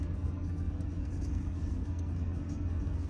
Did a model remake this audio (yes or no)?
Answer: yes